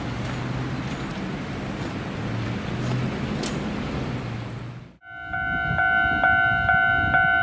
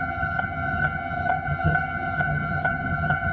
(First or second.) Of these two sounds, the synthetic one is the second